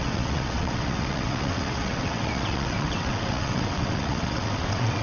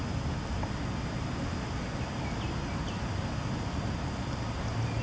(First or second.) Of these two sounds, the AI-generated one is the first